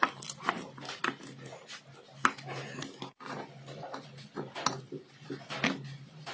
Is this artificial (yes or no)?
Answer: no